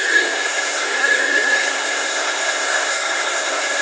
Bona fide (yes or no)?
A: no